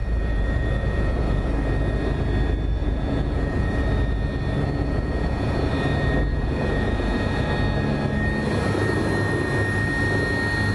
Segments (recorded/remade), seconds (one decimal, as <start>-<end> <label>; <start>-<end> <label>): 0.0-1.5 remade; 1.5-2.8 recorded; 2.8-3.8 remade; 3.8-4.8 recorded; 4.8-5.7 remade; 5.7-6.3 recorded; 6.3-7.5 remade; 7.5-10.7 recorded